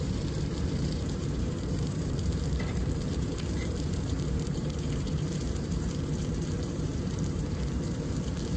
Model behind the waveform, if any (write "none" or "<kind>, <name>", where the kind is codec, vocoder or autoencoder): vocoder, BigVGAN v2